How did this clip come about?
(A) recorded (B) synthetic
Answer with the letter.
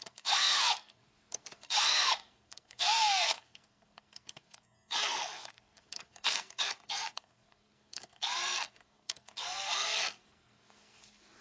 B